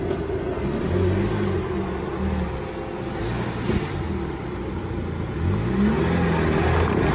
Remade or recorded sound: recorded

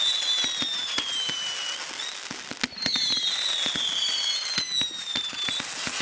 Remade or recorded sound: recorded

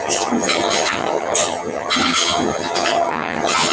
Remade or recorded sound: remade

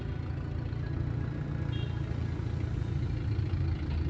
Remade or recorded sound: recorded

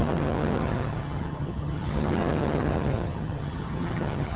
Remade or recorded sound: remade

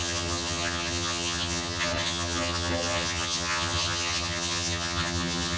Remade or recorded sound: remade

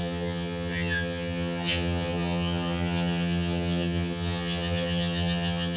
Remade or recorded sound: remade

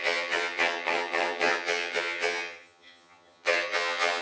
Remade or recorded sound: remade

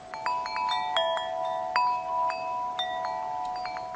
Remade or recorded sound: recorded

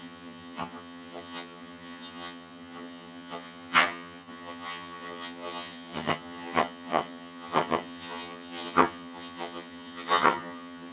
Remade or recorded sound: remade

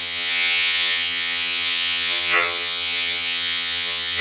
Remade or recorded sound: remade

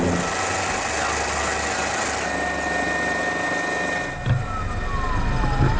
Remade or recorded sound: recorded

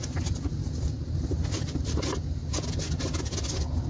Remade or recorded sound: recorded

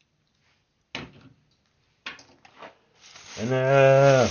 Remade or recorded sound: recorded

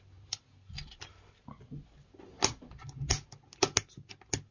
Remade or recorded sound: recorded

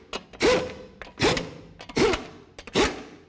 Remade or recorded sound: recorded